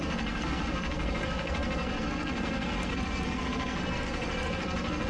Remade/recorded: remade